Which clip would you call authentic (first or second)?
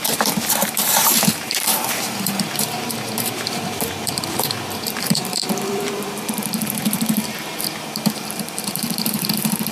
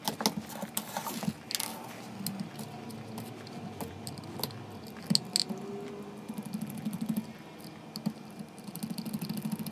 second